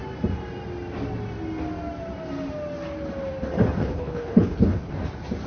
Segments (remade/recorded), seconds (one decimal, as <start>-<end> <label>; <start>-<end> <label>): 0.0-3.8 recorded; 3.8-4.9 remade; 4.9-5.5 recorded